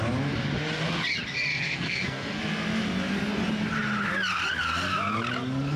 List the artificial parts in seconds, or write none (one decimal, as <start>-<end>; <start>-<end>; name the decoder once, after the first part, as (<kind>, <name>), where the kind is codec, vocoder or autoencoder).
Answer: 1.5-2.4 (codec, SNAC)